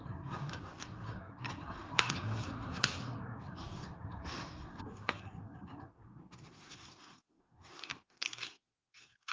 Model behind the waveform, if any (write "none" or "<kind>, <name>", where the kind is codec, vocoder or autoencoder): codec, SNAC